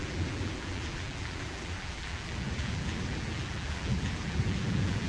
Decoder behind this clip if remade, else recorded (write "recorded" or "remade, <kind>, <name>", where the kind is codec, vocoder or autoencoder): remade, vocoder, BigVGAN v2